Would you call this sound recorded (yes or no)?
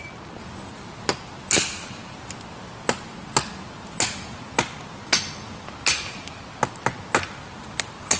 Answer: yes